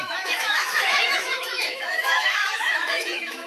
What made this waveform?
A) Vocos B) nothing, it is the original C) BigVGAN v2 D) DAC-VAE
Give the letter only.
D